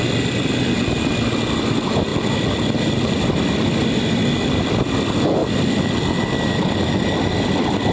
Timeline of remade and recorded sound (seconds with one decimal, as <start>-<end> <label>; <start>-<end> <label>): 0.0-7.9 recorded